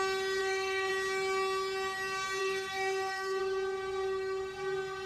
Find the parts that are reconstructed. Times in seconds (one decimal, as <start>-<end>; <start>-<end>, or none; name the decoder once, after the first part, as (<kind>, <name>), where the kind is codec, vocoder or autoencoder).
0.4-0.9 (codec, SNAC); 2.4-3.4